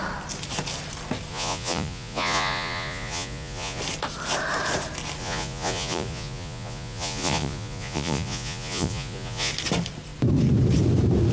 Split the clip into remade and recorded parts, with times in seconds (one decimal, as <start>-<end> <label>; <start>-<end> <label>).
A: 0.0-1.3 recorded; 1.3-3.8 remade; 3.8-5.2 recorded; 5.2-9.5 remade; 9.5-11.3 recorded

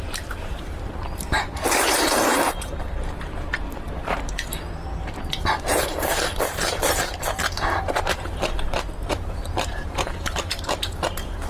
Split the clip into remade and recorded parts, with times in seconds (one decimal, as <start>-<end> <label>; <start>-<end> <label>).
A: 0.0-11.5 remade